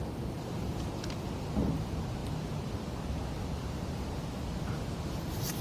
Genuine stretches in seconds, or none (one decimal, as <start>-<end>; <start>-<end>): 0.0-5.6